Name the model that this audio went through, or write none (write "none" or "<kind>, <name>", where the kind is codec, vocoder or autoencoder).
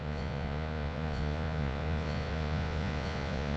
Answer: vocoder, Vocos